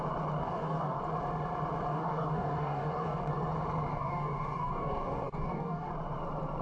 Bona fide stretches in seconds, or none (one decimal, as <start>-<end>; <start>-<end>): 0.0-0.4; 1.0-1.9; 3.3-3.9; 5.9-6.6